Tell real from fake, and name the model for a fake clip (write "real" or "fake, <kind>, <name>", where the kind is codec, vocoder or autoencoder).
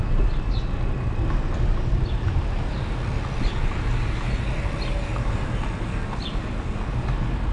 real